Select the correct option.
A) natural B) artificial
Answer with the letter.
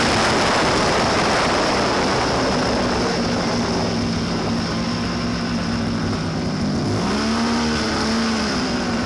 A